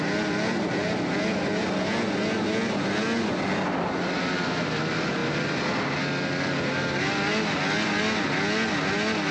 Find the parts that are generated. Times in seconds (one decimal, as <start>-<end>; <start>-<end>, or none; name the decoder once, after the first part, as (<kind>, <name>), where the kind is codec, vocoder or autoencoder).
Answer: none